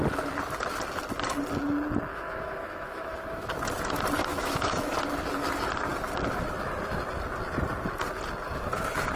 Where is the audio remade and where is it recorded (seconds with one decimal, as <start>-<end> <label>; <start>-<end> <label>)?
0.0-2.1 recorded; 2.1-3.5 remade; 3.5-4.3 recorded; 4.3-4.9 remade; 4.9-9.2 recorded